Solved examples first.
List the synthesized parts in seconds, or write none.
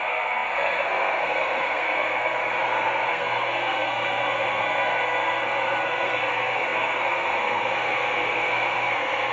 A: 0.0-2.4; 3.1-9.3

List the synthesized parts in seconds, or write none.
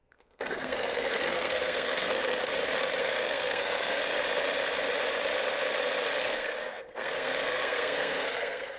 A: 0.0-2.5; 3.0-4.0; 6.2-8.8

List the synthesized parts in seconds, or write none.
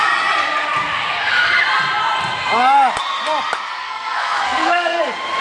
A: 3.8-5.0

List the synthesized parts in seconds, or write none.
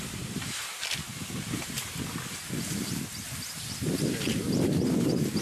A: none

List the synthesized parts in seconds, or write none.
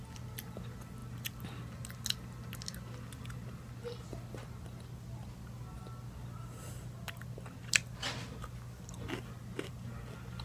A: none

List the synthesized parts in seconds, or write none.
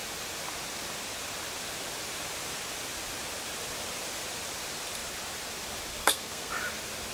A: 5.9-6.5